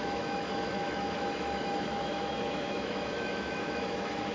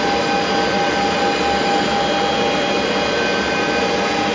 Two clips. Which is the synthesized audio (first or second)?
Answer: first